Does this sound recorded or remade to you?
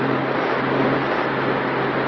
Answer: recorded